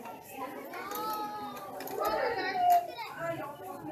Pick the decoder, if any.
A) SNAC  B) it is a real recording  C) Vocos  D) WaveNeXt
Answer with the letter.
B